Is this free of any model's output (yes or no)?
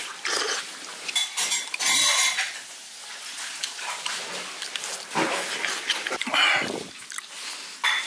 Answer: yes